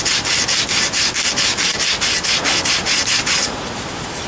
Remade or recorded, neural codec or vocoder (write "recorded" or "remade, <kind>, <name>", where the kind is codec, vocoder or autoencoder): recorded